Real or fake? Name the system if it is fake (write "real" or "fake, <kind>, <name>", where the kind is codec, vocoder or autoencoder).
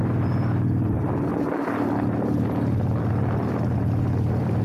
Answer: real